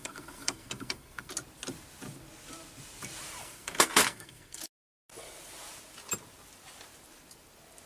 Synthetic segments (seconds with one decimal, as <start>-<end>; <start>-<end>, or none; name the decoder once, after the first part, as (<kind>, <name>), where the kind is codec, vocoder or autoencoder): 0.0-1.3 (codec, SNAC); 3.4-4.6